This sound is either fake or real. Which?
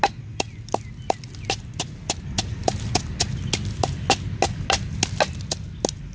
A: real